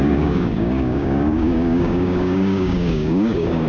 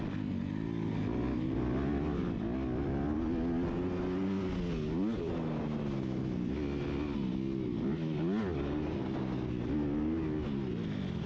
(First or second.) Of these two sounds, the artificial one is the first